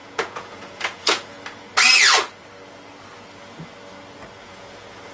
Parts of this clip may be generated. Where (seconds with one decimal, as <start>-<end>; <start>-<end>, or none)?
0.0-1.3; 4.4-5.1

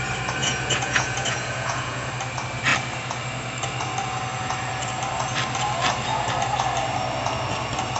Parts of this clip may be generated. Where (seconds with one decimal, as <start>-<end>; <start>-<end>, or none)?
0.4-2.1

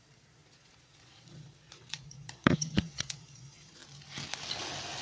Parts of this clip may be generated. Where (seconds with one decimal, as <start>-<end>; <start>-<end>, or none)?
0.0-3.8

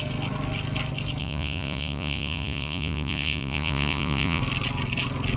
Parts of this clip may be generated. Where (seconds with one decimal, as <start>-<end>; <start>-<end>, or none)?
1.2-4.4

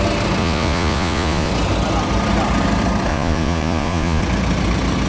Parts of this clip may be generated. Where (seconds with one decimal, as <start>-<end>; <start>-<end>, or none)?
0.4-1.5; 3.1-4.2

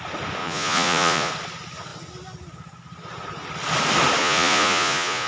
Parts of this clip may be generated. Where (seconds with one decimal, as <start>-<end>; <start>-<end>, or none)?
0.4-1.3; 4.2-5.3

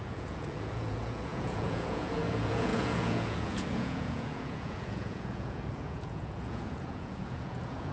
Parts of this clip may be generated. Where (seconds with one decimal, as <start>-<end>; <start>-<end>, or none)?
0.0-7.9